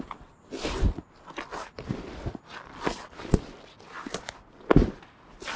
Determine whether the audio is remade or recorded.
recorded